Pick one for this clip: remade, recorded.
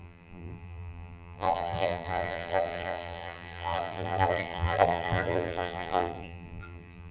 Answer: remade